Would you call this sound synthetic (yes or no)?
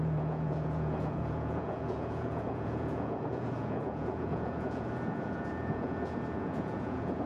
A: yes